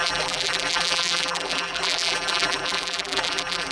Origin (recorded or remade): remade